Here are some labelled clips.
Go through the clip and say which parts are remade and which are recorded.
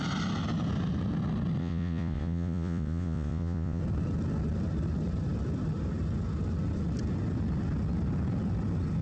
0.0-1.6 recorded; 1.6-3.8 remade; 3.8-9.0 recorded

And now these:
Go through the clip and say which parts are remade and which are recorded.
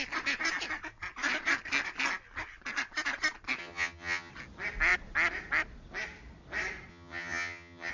0.0-3.6 recorded; 3.6-4.3 remade; 4.3-6.9 recorded; 6.9-7.9 remade